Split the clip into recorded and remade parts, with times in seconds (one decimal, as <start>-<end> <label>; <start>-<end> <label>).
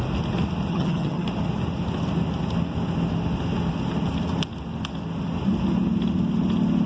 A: 0.0-0.7 recorded; 0.7-1.3 remade; 1.3-6.9 recorded